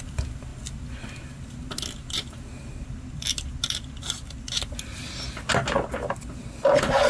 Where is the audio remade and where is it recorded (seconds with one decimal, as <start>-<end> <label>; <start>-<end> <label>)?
0.0-7.1 recorded